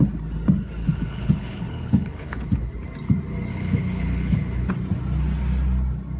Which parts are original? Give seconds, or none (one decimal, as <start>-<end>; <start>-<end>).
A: 0.0-0.8; 2.7-3.5; 4.7-6.2